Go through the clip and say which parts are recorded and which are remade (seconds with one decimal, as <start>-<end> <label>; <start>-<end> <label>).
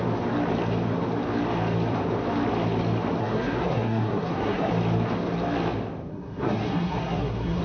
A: 0.0-3.2 recorded; 3.2-4.7 remade; 4.7-6.1 recorded; 6.1-7.6 remade